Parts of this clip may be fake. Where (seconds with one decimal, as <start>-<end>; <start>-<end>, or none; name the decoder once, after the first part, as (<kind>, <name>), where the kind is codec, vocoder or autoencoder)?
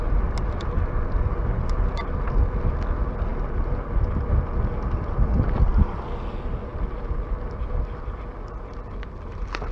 none